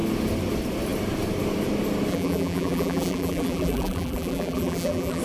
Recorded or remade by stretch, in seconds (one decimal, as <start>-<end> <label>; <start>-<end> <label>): 0.0-2.1 recorded; 2.1-5.2 remade